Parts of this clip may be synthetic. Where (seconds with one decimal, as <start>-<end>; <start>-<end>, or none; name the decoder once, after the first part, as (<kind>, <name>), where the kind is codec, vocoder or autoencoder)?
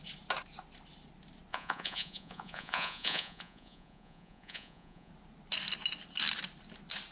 1.5-5.1 (vocoder, Vocos)